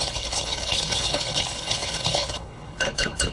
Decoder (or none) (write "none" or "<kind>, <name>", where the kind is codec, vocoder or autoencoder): codec, HILCodec